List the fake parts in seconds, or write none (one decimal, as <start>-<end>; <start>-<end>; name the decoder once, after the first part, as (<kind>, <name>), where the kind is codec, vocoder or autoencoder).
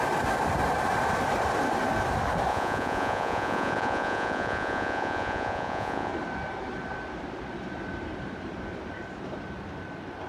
2.5-6.1 (vocoder, Vocos)